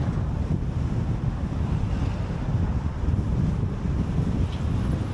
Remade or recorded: recorded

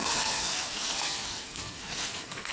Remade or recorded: remade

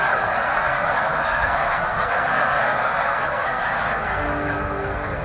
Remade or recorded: remade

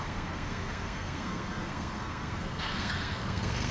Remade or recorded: remade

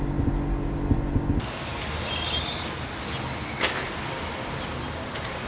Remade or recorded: recorded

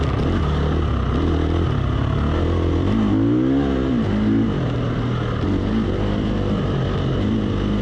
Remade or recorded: recorded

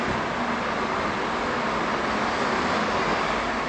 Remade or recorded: recorded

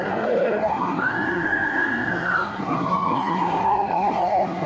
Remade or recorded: remade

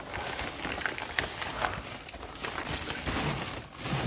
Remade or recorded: recorded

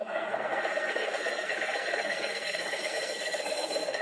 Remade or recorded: remade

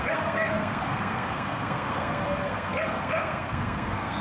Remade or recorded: remade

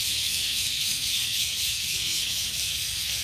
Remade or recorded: remade